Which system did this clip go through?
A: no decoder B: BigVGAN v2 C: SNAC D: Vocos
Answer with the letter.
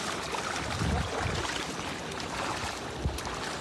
A